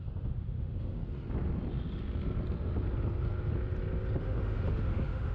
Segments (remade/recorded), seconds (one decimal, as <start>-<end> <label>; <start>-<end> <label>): 0.0-1.0 remade; 1.0-4.2 recorded; 4.2-5.3 remade